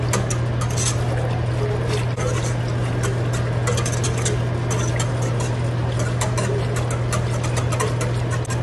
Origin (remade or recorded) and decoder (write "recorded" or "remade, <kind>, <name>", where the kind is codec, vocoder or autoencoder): recorded